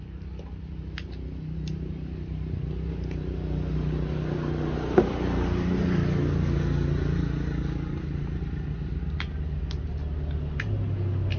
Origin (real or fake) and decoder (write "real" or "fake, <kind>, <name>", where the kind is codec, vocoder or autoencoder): real